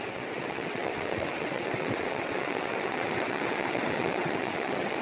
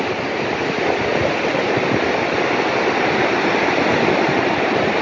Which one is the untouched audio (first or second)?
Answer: second